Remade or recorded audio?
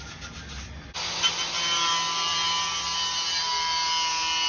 recorded